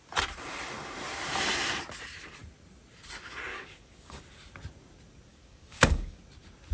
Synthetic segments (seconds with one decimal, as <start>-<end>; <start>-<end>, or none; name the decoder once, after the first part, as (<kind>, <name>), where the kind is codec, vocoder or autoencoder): 3.5-4.2 (codec, DAC); 5.3-6.2